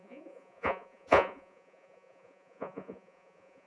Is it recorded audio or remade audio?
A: remade